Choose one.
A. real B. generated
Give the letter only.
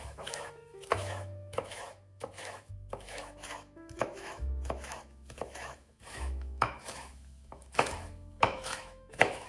B